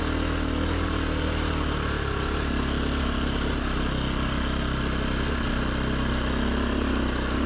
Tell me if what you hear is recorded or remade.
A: recorded